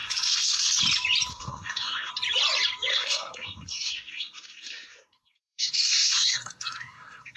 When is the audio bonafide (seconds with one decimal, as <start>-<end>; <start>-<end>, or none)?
0.7-1.3; 2.1-2.9